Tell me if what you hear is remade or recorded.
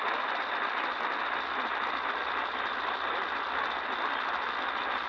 recorded